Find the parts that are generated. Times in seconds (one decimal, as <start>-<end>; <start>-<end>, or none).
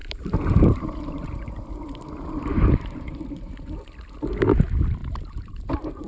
0.0-3.7; 5.0-6.1